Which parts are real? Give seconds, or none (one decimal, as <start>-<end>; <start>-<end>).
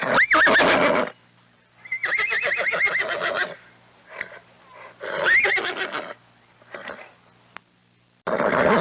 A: 0.0-8.8